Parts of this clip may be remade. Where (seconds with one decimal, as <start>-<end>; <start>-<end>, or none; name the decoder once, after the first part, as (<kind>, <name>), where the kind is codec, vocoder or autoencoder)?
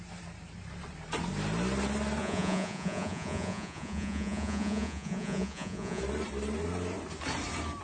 2.2-6.0 (vocoder, Vocos)